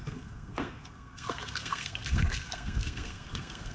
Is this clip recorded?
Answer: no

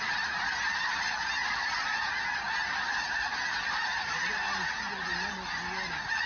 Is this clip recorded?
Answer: yes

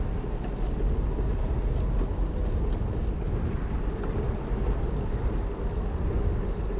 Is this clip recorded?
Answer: yes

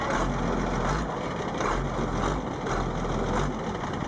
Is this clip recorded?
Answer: yes